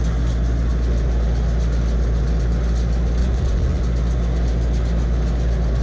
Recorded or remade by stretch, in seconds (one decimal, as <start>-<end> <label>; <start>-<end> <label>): 0.0-3.2 recorded; 3.2-3.8 remade; 3.8-5.8 recorded